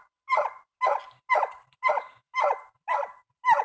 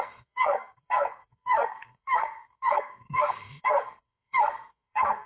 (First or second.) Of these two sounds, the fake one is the second